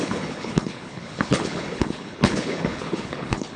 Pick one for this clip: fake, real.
fake